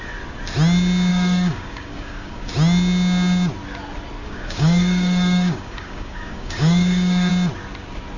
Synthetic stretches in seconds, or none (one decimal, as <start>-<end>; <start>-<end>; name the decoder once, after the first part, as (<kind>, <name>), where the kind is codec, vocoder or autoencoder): 1.1-2.5 (codec, DAC); 4.2-7.3